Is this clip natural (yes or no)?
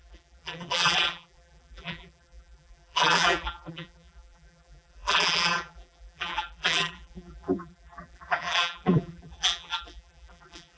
no